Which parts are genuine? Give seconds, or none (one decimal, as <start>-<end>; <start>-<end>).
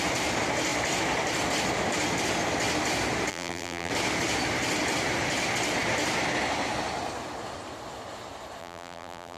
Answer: 0.0-3.3; 3.9-8.6